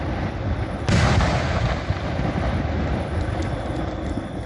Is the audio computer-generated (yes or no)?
no